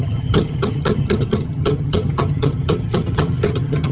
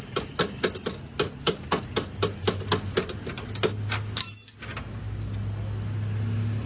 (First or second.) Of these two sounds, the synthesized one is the first